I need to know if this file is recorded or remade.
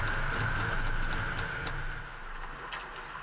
recorded